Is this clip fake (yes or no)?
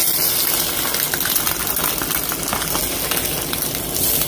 no